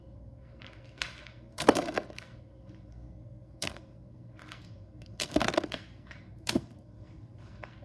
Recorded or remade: remade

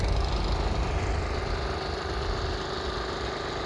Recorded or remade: recorded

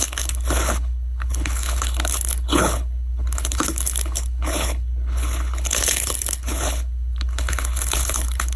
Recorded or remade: remade